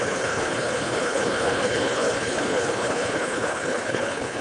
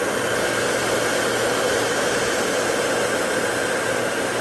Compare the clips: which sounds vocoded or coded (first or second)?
first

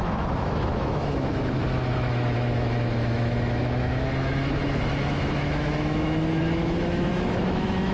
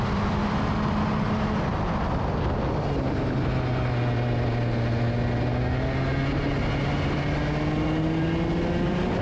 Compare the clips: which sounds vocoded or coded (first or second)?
first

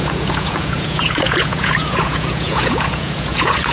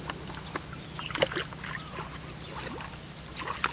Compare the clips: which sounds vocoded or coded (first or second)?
first